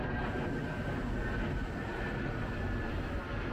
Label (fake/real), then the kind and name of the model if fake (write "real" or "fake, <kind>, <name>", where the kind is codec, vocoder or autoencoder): real